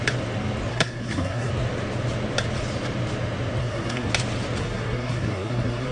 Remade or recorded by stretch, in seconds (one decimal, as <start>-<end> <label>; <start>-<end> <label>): 0.0-0.7 recorded; 0.7-1.5 remade; 1.5-3.6 recorded; 3.6-4.1 remade; 4.1-4.6 recorded; 4.6-5.9 remade

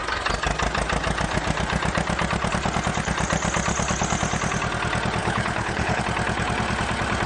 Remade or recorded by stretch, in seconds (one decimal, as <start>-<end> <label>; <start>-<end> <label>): 0.0-5.2 recorded; 5.2-6.0 remade; 6.0-7.3 recorded

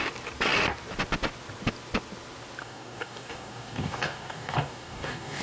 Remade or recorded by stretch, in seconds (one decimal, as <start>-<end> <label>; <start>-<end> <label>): 0.0-2.6 recorded; 2.6-5.4 remade

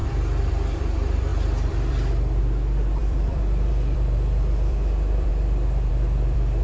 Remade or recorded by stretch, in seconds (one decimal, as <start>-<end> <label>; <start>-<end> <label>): 0.0-5.3 remade; 5.3-5.9 recorded; 5.9-6.6 remade

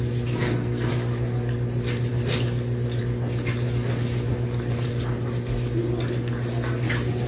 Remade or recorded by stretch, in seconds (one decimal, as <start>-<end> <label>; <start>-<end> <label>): 0.0-0.4 recorded; 0.4-0.9 remade; 0.9-7.3 recorded